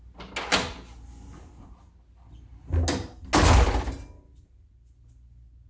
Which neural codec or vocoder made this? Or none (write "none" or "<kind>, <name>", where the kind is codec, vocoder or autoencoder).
none